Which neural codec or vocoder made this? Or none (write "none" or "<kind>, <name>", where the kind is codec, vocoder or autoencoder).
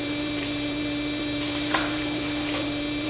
vocoder, BigVGAN v2